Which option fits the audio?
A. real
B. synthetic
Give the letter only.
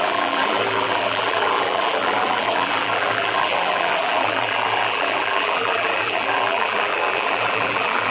B